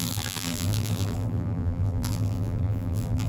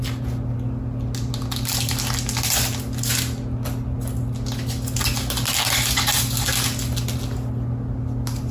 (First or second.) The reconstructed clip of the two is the first